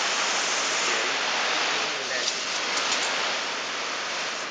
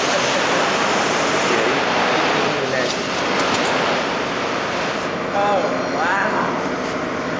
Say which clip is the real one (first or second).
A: second